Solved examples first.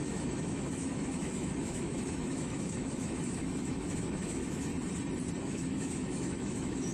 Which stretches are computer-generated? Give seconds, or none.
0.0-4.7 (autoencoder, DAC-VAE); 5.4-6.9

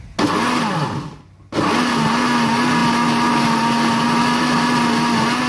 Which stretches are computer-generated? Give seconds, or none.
none